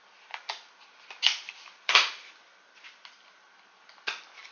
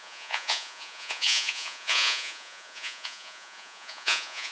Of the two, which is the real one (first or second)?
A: first